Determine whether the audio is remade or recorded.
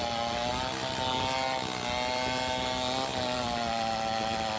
recorded